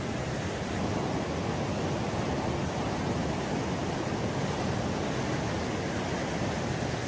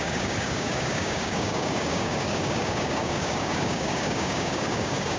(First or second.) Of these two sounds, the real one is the first